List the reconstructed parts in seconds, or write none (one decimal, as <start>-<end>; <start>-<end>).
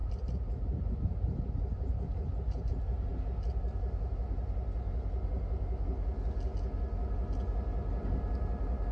0.0-2.7